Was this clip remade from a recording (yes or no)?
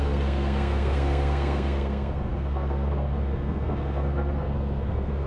yes